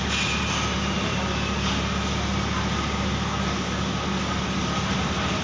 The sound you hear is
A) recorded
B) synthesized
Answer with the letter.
A